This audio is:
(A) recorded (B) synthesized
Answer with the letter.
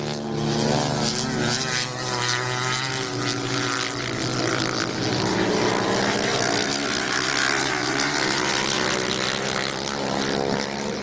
A